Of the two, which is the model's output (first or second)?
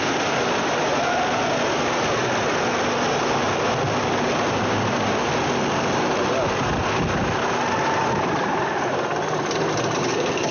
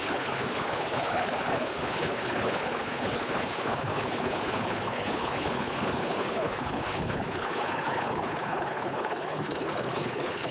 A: second